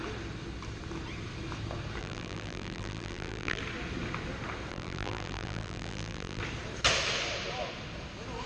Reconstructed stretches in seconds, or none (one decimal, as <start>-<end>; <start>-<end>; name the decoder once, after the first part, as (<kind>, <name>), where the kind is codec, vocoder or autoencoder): 2.0-3.6 (vocoder, BigVGAN v2); 4.7-6.4